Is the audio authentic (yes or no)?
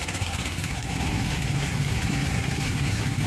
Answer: no